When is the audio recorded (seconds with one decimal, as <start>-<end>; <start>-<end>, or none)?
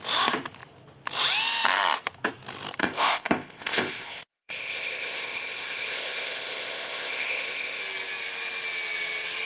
0.0-2.8; 7.8-9.4